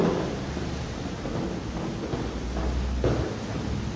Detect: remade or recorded recorded